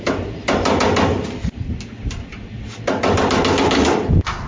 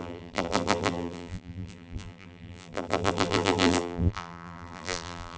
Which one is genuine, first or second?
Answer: first